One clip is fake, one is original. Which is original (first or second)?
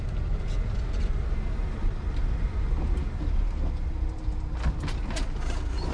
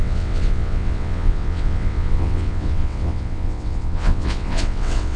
first